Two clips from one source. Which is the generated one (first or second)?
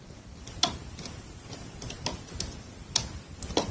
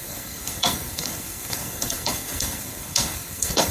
second